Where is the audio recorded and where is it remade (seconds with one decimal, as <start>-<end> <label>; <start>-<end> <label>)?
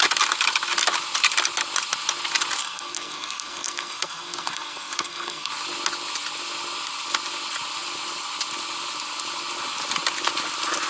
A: 0.0-2.6 recorded; 2.6-5.5 remade; 5.5-10.9 recorded